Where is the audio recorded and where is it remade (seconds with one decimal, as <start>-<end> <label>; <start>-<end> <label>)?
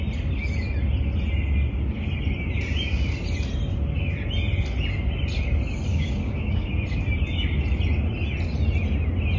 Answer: 0.0-5.9 recorded; 5.9-6.7 remade; 6.7-9.4 recorded